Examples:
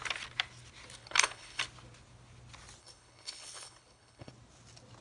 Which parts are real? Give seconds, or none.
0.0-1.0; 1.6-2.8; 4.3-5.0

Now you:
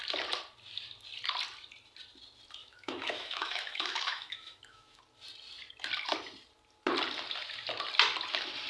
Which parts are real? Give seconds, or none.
0.0-2.6; 5.0-8.7

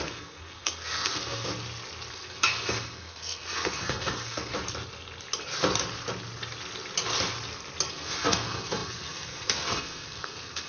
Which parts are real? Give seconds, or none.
1.5-2.1; 4.5-7.9

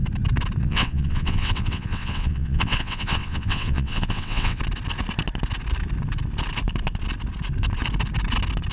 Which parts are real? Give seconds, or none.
0.0-0.6; 4.6-8.7

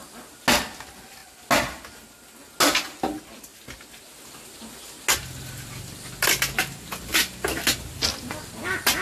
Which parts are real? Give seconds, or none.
0.0-9.0

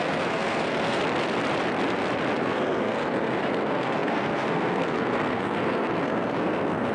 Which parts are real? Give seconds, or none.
1.0-2.4

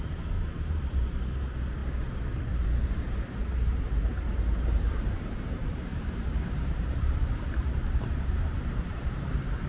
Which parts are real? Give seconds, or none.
none